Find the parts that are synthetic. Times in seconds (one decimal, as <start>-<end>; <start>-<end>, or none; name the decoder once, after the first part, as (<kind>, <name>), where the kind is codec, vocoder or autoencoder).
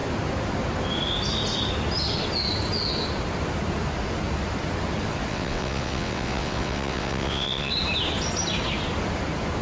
5.3-7.7 (vocoder, WaveNeXt)